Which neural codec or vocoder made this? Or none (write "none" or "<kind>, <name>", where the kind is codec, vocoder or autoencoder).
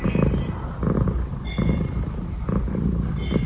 none